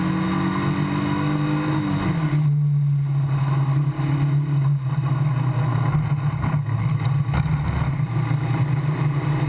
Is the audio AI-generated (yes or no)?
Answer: no